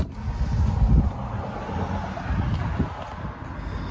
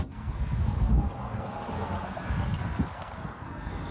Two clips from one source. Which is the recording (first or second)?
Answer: first